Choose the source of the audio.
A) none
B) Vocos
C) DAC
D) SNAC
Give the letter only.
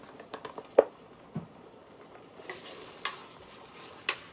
A